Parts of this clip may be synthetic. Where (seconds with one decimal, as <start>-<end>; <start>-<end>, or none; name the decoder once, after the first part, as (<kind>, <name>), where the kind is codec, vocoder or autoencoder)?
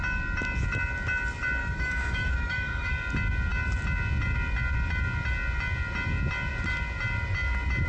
1.6-2.9 (autoencoder, DAC-VAE)